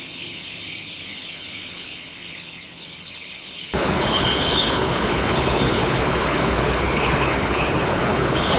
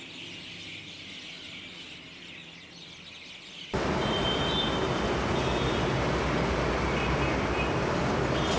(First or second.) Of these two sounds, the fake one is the first